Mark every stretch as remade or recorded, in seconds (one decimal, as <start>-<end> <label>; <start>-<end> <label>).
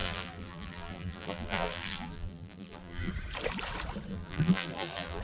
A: 0.0-3.1 remade; 3.1-4.1 recorded; 4.1-5.2 remade